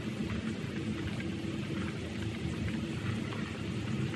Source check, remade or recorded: recorded